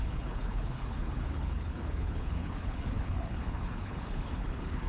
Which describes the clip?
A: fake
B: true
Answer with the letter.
A